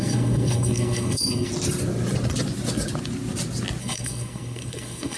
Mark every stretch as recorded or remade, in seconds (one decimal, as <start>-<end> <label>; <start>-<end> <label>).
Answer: 0.0-1.5 remade; 1.5-3.8 recorded; 3.8-5.2 remade